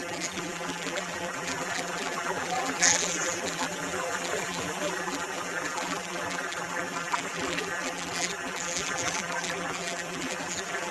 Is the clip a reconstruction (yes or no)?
yes